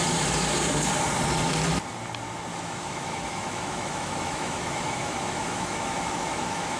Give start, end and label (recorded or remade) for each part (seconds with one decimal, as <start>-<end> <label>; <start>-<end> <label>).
0.0-2.5 recorded; 2.5-6.8 remade